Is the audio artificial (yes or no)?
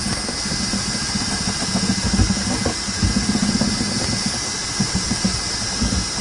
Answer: no